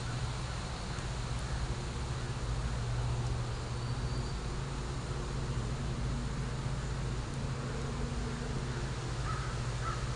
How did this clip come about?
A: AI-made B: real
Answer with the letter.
B